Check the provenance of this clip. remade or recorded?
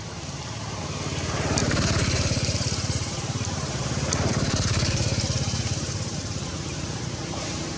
remade